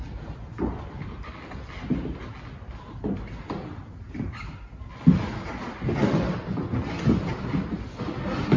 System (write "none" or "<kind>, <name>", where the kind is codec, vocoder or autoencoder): none